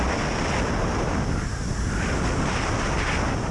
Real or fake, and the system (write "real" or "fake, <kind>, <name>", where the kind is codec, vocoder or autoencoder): real